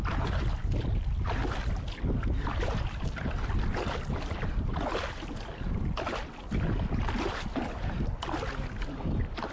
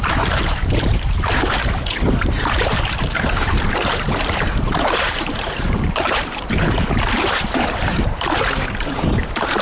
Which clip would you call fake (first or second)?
second